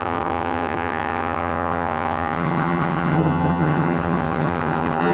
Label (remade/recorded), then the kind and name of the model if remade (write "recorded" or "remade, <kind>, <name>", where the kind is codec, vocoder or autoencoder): remade, vocoder, HiFi-GAN